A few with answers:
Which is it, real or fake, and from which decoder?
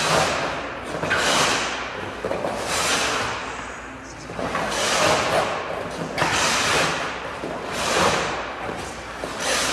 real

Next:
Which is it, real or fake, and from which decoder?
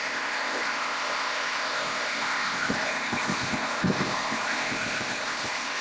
fake, codec, ZipCodec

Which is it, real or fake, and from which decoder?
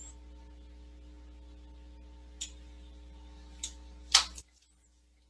real